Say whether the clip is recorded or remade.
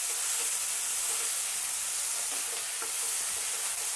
recorded